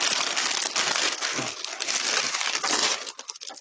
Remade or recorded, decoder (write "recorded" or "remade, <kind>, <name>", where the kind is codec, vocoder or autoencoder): recorded